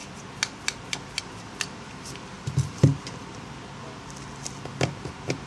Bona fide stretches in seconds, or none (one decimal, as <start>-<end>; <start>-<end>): 0.0-1.2; 2.9-5.1